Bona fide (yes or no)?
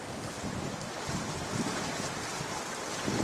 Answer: yes